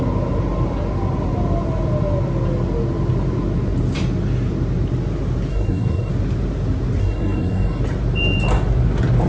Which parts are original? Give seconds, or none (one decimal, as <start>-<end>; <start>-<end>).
0.0-5.5; 6.1-7.0; 7.8-9.3